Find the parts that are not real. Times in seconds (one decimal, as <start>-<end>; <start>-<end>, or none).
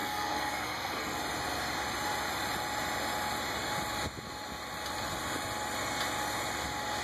0.0-1.2